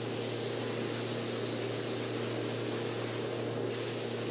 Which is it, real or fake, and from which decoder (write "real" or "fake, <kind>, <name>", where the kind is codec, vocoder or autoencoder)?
real